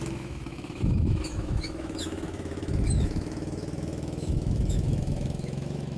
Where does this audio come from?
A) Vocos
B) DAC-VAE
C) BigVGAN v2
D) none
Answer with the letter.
B